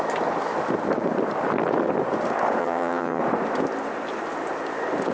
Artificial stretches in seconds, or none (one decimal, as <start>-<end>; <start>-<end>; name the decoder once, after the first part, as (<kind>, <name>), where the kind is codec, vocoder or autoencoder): 2.6-3.2 (vocoder, HiFi-GAN)